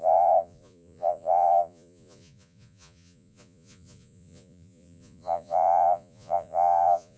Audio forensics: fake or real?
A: fake